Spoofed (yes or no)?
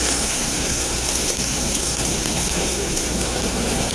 yes